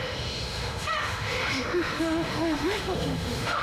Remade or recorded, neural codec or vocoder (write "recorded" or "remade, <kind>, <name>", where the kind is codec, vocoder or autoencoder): remade, autoencoder, DAC-VAE